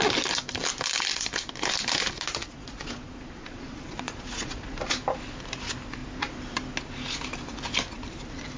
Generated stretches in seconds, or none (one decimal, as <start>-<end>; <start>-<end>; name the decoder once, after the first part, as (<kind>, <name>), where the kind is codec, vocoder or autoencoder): 2.4-4.8 (vocoder, Vocos)